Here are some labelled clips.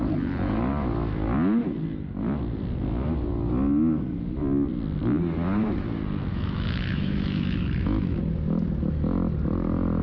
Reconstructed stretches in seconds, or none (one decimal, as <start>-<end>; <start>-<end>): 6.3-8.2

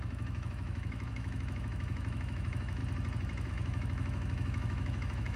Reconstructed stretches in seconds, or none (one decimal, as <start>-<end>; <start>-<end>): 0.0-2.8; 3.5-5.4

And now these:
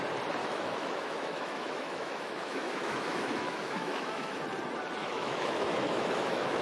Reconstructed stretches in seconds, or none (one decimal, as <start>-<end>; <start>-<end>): 0.4-4.4; 5.0-6.6

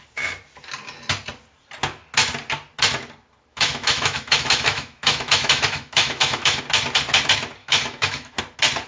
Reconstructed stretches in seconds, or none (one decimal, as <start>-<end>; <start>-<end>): 3.5-6.6; 7.6-8.4

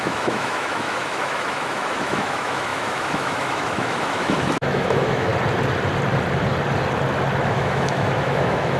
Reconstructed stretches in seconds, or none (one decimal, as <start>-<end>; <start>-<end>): 0.0-5.3; 7.4-8.8

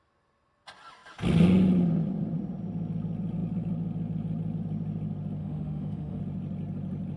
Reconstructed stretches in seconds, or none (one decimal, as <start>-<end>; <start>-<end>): 5.4-6.2